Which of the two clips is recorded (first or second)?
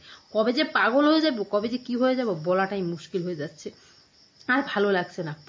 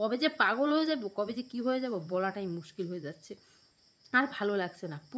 first